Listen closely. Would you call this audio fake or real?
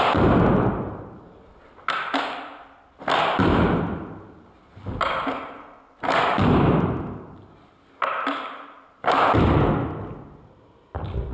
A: real